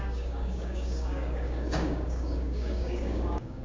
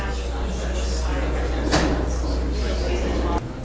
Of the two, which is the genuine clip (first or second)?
second